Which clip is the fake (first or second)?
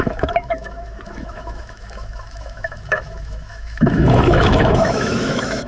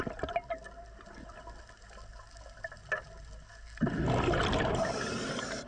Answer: first